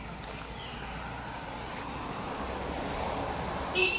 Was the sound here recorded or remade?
recorded